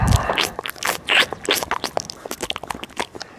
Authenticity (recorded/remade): recorded